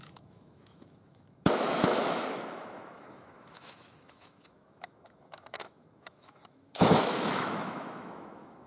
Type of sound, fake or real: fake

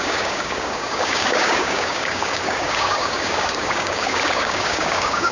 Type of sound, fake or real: fake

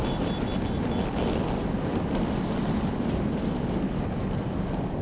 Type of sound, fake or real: real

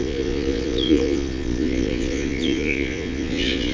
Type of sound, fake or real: fake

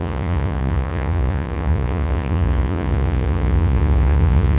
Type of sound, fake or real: fake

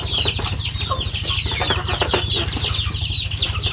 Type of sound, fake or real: real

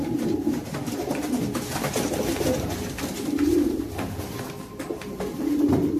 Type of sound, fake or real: fake